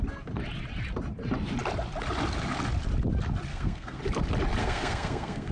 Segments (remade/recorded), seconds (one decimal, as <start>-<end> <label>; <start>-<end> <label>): 0.0-3.5 recorded; 3.5-4.0 remade; 4.0-4.6 recorded; 4.6-5.5 remade